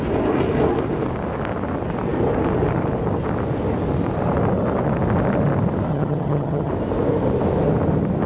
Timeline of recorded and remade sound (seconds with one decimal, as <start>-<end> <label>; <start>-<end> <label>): 0.0-5.9 recorded; 5.9-6.7 remade; 6.7-8.3 recorded